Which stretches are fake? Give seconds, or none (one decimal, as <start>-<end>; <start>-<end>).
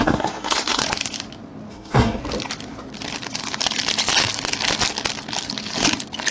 0.0-0.8; 1.7-2.2